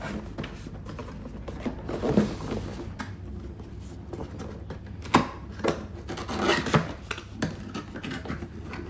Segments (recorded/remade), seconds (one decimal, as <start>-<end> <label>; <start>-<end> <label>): 0.0-8.9 recorded